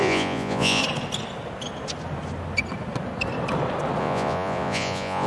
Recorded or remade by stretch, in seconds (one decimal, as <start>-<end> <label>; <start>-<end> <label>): 0.0-0.8 remade; 0.8-4.0 recorded; 4.0-5.3 remade